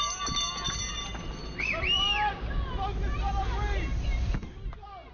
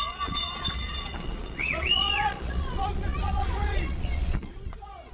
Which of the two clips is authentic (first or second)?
first